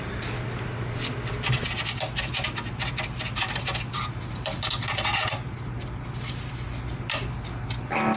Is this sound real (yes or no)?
yes